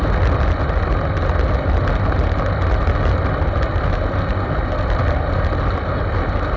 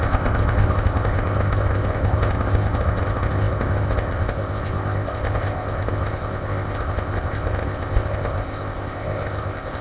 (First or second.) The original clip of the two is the first